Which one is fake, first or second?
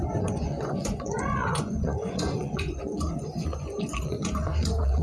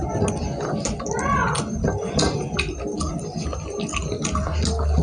first